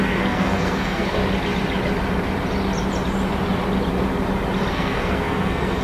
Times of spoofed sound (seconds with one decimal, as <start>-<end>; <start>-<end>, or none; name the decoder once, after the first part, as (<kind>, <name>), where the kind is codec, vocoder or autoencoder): 0.0-1.2 (codec, SNAC); 4.7-5.8